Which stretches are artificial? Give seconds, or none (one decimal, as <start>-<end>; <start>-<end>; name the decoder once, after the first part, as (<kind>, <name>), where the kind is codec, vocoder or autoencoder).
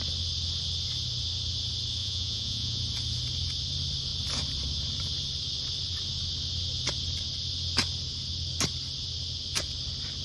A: 2.0-2.8 (vocoder, Vocos)